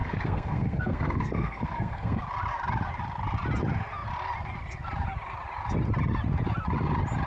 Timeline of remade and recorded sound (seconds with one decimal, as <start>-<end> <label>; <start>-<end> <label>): 0.0-2.2 remade; 2.2-7.3 recorded

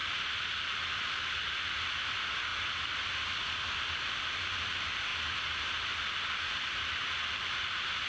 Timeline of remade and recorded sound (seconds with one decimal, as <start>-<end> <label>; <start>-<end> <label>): 0.0-8.1 recorded